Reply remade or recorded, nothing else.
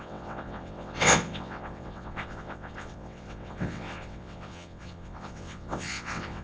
remade